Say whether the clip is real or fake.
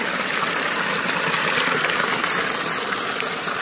real